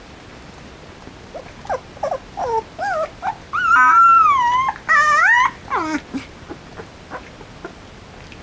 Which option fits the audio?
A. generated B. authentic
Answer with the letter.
B